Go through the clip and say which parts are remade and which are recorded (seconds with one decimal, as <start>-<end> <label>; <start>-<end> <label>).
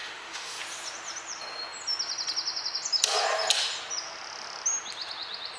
0.0-0.6 remade; 0.6-5.6 recorded